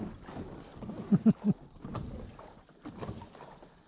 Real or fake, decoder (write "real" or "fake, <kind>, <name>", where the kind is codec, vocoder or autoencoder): real